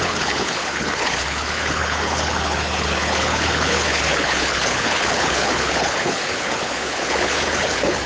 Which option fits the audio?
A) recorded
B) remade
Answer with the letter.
B